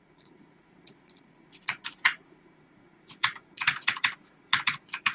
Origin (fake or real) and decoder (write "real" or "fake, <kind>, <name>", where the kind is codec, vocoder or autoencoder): fake, vocoder, Vocos